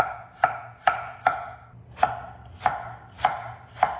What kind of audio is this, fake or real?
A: real